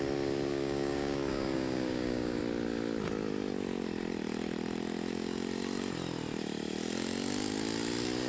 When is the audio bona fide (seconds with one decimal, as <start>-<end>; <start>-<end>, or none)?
0.0-0.5; 2.4-8.3